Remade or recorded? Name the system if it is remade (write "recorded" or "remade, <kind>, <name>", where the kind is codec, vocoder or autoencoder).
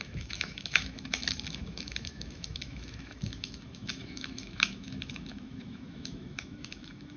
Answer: remade, autoencoder, DAC-VAE